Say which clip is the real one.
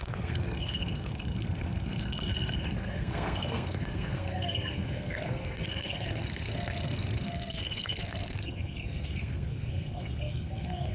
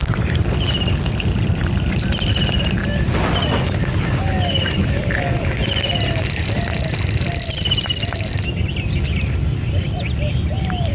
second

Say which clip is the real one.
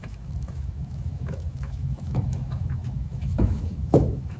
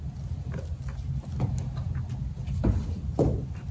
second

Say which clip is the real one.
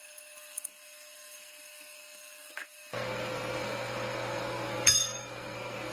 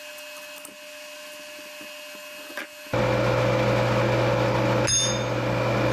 second